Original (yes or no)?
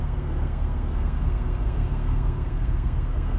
no